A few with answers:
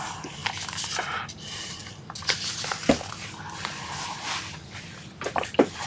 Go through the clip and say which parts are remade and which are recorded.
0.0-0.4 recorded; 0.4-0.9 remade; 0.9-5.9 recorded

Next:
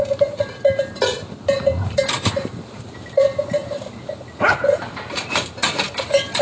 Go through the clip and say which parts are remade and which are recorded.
0.0-6.4 remade

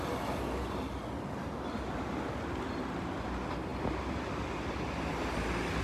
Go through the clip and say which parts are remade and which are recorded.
0.0-5.8 recorded